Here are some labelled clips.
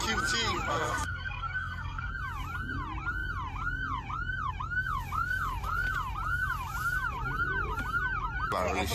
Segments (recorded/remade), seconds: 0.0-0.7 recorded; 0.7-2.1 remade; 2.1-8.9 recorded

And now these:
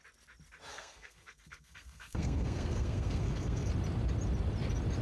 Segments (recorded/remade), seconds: 0.0-0.7 recorded; 0.7-3.7 remade; 3.7-5.0 recorded

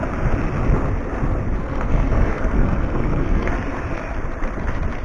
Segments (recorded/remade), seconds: 0.0-1.6 recorded; 1.6-3.5 remade; 3.5-5.0 recorded

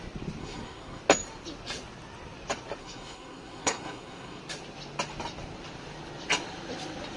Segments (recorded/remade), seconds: 0.0-0.4 recorded; 0.4-1.0 remade; 1.0-2.8 recorded; 2.8-4.4 remade; 4.4-7.2 recorded

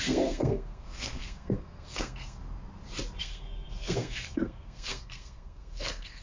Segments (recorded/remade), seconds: 0.0-2.4 remade; 2.4-3.2 recorded; 3.2-6.2 remade

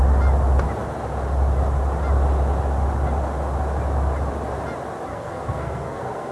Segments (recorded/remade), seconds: 0.0-5.1 recorded; 5.1-6.3 remade

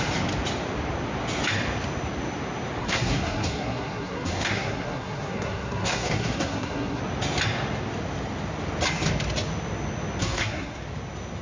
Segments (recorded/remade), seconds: 0.0-2.8 recorded; 2.8-7.0 remade; 7.0-10.2 recorded; 10.2-10.8 remade; 10.8-11.4 recorded

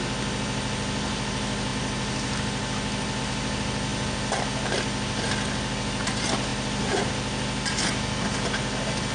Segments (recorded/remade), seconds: 0.0-9.1 recorded